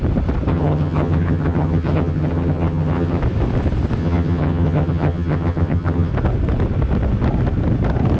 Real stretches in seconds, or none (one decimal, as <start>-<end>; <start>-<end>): 0.0-0.5; 3.2-4.0; 6.1-8.2